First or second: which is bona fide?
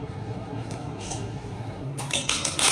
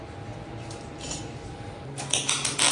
second